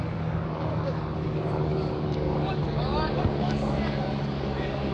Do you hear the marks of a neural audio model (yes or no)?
yes